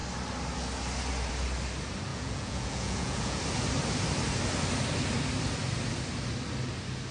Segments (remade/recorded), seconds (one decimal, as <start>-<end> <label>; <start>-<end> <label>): 0.0-2.1 recorded; 2.1-3.4 remade; 3.4-7.1 recorded